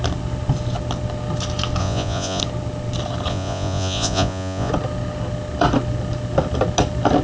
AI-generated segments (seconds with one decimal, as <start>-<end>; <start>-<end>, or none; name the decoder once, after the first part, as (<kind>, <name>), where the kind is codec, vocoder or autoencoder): 1.8-2.4 (vocoder, Vocos); 3.3-4.7